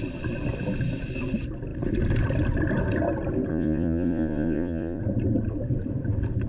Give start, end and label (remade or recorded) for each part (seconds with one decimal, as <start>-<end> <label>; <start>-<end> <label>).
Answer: 0.0-3.5 recorded; 3.5-5.0 remade; 5.0-6.5 recorded